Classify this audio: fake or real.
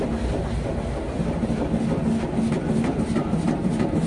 real